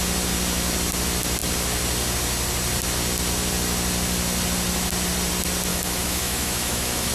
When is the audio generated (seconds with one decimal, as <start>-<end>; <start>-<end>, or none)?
5.7-7.1